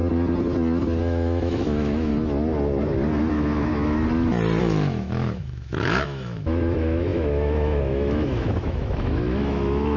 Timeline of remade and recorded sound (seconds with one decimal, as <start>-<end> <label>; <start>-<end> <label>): 0.0-1.0 recorded; 1.0-2.1 remade; 2.1-3.3 recorded; 3.3-3.7 remade; 3.7-4.6 recorded; 4.6-10.0 remade